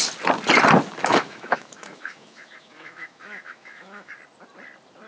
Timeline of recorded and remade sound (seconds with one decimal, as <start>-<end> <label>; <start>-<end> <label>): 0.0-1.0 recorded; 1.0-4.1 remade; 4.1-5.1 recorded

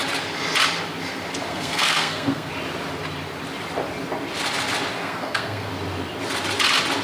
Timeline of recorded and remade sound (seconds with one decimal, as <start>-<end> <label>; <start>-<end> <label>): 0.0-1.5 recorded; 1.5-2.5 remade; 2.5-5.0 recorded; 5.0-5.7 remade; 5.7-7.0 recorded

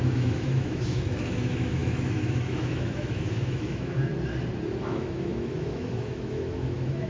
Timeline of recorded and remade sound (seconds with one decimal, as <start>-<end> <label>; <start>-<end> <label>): 0.0-4.1 remade; 4.1-4.8 recorded; 4.8-7.1 remade

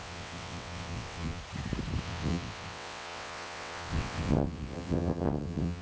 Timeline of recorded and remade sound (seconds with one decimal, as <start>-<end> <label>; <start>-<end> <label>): 0.0-1.4 remade; 1.4-2.0 recorded; 2.0-5.8 remade